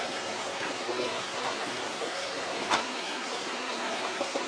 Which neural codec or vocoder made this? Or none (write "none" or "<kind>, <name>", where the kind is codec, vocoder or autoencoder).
codec, SNAC